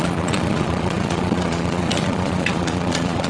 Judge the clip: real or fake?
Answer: fake